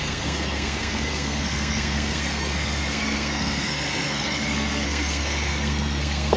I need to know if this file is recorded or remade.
remade